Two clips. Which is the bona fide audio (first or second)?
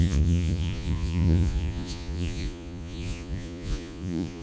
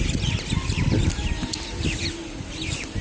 second